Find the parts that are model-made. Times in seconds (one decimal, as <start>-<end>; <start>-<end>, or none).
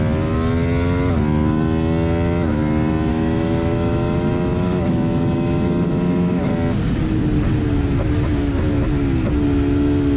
3.1-6.5